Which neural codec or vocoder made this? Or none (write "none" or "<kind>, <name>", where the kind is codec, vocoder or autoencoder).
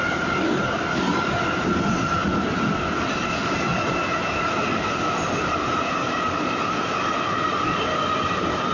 none